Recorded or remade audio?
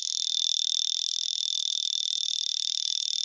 recorded